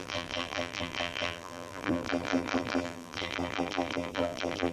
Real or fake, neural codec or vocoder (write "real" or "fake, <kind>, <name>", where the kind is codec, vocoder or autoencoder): fake, vocoder, BigVGAN v2